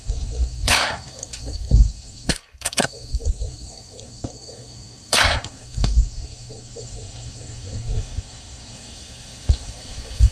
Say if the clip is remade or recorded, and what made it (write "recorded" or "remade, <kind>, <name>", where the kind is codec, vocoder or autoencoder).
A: remade, codec, SNAC